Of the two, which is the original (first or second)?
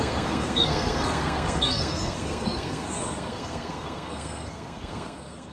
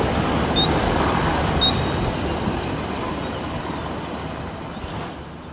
second